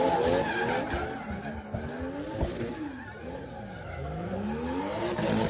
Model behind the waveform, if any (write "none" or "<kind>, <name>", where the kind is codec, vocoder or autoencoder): none